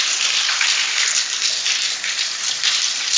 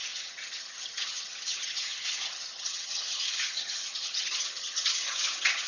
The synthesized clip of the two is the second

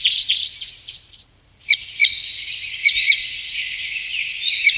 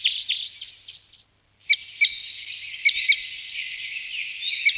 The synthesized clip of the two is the first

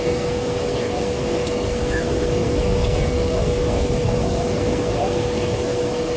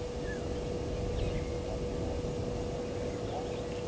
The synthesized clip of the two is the first